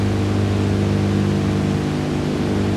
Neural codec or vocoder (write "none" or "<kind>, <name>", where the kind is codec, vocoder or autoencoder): none